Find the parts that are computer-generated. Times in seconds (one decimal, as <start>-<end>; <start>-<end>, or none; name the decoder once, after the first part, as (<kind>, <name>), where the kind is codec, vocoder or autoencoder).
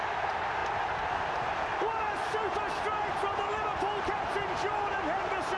none